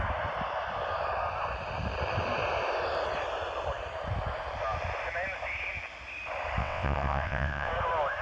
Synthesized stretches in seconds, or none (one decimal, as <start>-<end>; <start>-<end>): 6.6-7.7